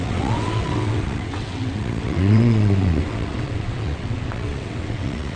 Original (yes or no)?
no